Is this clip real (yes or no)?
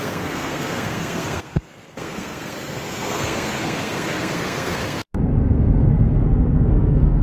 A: no